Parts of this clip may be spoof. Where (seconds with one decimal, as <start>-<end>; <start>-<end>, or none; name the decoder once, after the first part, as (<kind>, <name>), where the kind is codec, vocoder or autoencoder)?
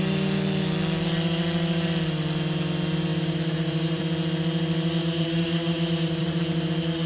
3.1-4.0 (vocoder, BigVGAN v2); 5.0-6.4